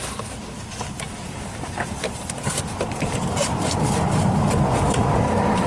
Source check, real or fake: fake